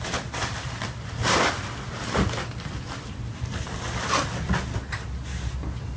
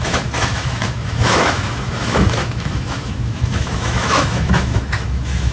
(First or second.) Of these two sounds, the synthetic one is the second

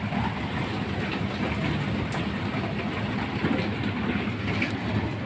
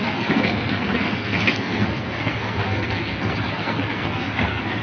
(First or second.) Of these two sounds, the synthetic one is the second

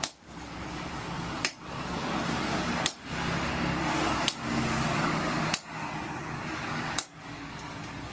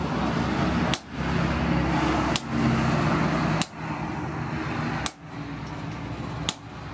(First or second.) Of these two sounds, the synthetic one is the first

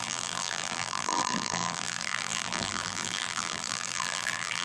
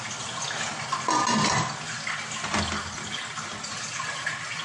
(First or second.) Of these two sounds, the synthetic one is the first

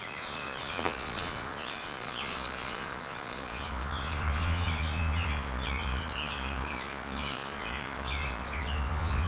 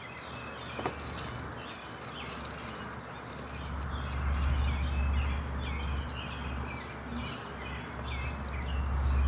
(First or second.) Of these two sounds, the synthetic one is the first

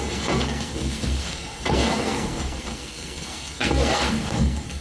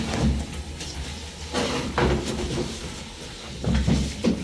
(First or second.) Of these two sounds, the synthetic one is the first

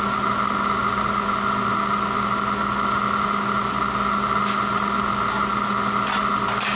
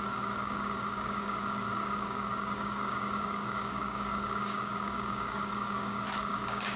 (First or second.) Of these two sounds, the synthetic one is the second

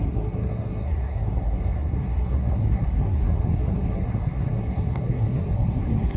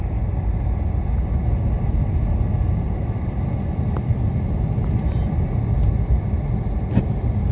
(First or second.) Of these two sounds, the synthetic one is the first